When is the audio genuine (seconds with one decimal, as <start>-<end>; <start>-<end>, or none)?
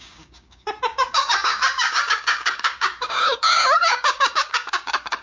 none